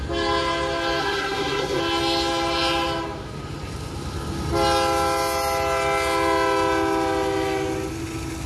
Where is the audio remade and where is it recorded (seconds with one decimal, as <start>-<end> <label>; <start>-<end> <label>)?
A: 0.0-1.0 recorded; 1.0-1.8 remade; 1.8-8.5 recorded